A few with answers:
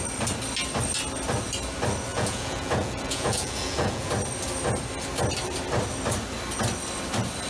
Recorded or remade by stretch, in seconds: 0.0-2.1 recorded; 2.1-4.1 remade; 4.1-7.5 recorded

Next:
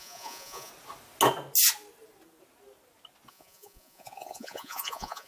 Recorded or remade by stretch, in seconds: 0.0-0.7 remade; 0.7-3.3 recorded; 3.3-5.3 remade

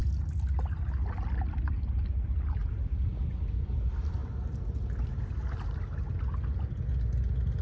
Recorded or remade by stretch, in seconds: 0.0-7.6 recorded

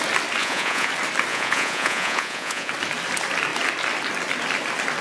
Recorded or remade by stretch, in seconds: 0.0-0.4 recorded; 0.4-0.9 remade; 0.9-1.3 recorded; 1.3-2.7 remade; 2.7-5.0 recorded